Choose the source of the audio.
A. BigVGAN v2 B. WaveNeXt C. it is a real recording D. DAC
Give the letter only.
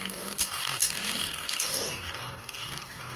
D